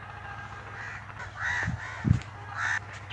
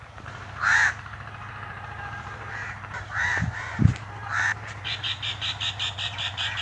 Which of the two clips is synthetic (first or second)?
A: second